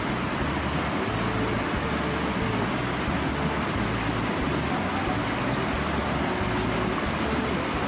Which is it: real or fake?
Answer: real